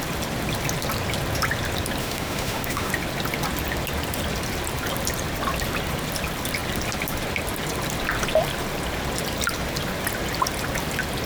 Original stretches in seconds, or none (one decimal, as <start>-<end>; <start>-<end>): 0.0-2.0; 2.9-11.3